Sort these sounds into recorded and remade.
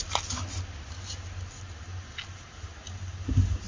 recorded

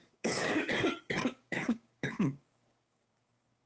remade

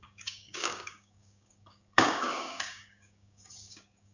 remade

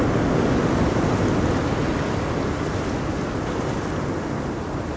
recorded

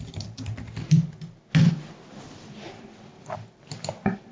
recorded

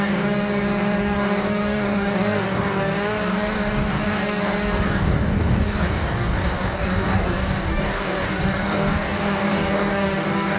remade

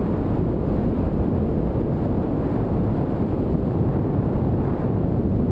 recorded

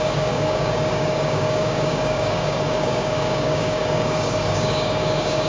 remade